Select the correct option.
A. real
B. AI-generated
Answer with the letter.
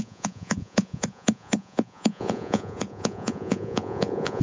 B